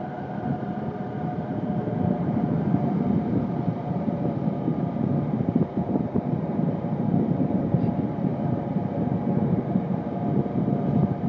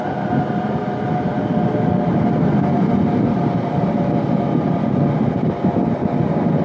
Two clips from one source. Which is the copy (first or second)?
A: first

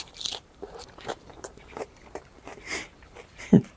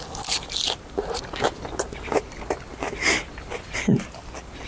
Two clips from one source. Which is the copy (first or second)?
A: first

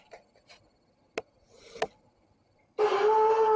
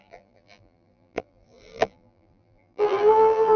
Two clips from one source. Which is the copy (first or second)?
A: second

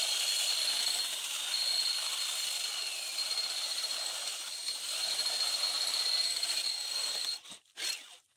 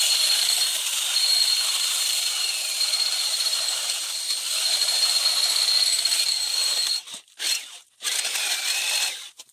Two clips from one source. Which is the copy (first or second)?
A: second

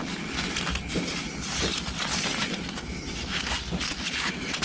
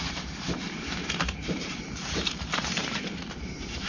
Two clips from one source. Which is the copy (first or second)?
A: second